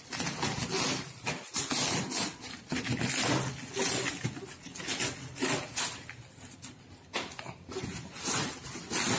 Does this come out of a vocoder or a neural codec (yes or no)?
no